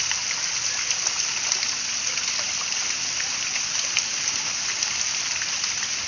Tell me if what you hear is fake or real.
real